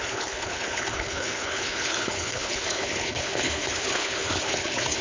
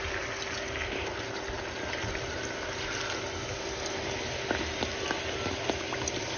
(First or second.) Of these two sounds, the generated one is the first